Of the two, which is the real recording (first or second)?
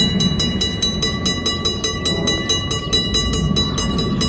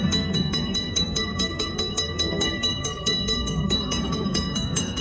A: first